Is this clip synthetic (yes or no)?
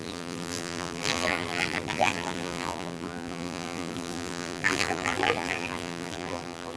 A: yes